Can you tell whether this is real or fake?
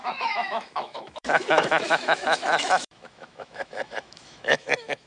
fake